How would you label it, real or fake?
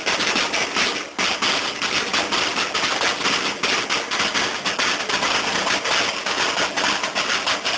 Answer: real